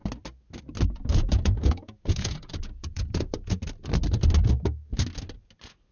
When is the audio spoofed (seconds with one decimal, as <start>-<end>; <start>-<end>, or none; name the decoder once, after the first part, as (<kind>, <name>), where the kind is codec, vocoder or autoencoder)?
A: 1.1-3.6 (vocoder, Vocos)